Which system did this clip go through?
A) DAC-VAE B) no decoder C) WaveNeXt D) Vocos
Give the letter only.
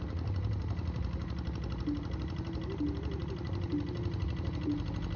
B